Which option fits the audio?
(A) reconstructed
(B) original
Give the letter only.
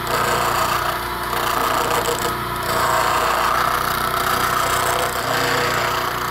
B